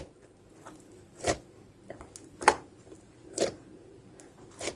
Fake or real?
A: real